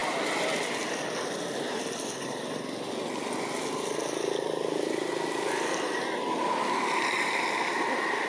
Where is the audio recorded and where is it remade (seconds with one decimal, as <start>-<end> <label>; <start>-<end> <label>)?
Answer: 0.0-8.3 recorded